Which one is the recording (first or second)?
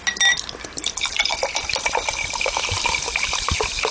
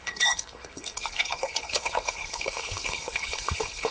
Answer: first